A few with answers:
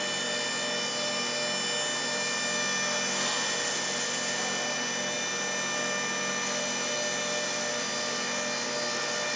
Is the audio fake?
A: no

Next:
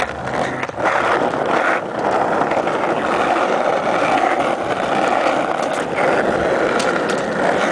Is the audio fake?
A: no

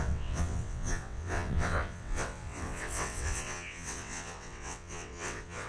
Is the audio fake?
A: yes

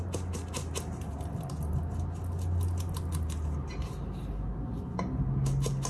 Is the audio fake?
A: no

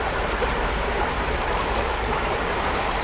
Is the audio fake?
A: yes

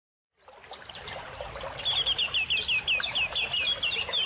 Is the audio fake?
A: no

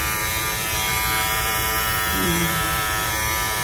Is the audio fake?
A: yes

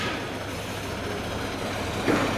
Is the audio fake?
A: no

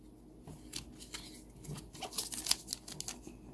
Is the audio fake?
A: no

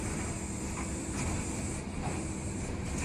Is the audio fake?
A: yes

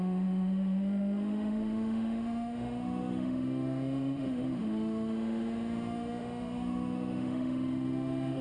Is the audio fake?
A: yes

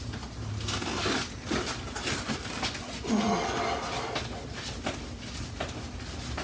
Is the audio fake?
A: no